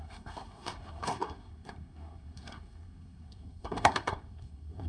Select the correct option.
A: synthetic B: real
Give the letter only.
A